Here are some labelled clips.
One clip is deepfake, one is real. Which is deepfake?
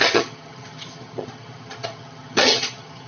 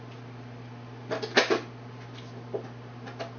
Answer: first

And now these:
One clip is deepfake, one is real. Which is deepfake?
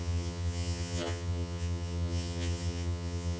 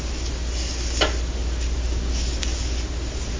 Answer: first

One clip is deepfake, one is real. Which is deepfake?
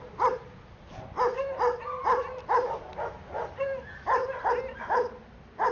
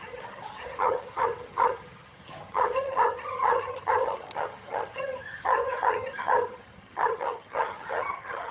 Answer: second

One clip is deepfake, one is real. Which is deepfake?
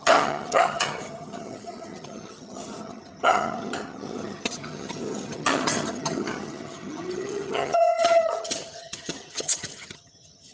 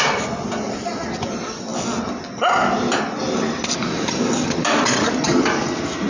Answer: first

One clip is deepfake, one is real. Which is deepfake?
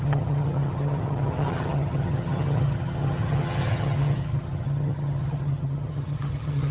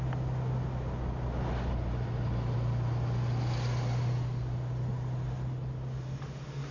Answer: first